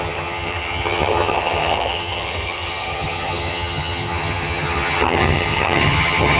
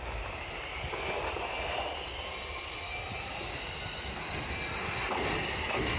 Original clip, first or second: second